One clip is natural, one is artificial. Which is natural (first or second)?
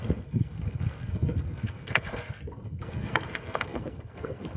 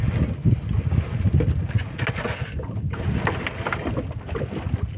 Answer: second